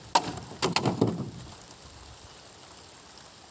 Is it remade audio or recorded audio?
recorded